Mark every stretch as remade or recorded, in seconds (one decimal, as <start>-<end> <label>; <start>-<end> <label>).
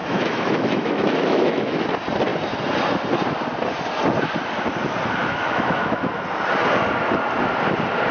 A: 0.0-1.8 remade; 1.8-5.2 recorded; 5.2-6.1 remade; 6.1-8.1 recorded